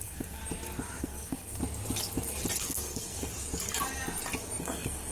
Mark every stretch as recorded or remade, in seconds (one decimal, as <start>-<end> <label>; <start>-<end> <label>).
0.0-0.4 remade; 0.4-1.0 recorded; 1.0-1.6 remade; 1.6-2.6 recorded; 2.6-3.3 remade; 3.3-4.6 recorded; 4.6-5.1 remade